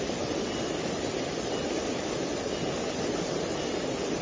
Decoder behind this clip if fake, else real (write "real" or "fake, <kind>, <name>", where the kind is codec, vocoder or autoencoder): real